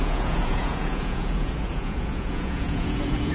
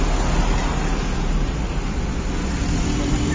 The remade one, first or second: first